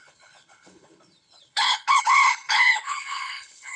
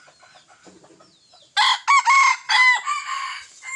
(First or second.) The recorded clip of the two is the second